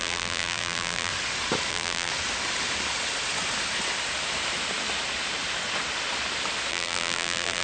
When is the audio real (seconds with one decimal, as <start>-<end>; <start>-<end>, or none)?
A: 1.1-1.7; 2.1-6.7